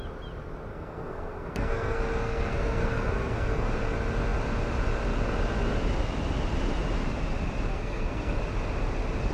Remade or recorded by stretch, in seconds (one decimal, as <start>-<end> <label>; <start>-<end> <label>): 0.0-0.7 recorded; 0.7-3.7 remade; 3.7-7.7 recorded; 7.7-8.4 remade; 8.4-9.3 recorded